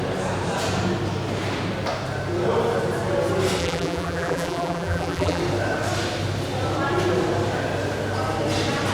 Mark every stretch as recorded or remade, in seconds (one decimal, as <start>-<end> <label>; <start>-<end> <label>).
0.0-3.6 recorded; 3.6-5.4 remade; 5.4-8.9 recorded